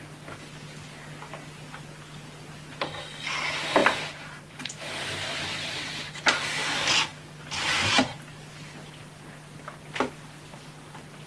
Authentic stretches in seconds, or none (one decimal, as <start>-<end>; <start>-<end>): 0.0-3.8; 5.9-11.3